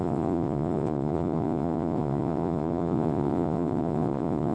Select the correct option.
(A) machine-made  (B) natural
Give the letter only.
A